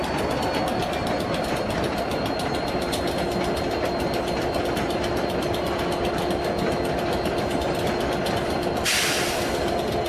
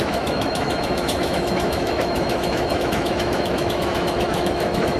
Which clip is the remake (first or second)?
second